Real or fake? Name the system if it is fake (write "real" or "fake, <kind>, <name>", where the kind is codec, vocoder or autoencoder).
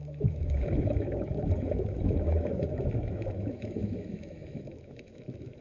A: fake, autoencoder, DAC-VAE